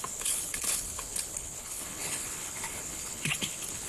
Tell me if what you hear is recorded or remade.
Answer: remade